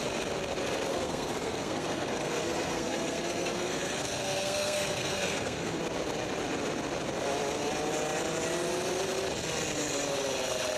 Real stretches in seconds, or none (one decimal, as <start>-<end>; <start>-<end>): 0.0-0.9; 5.8-10.8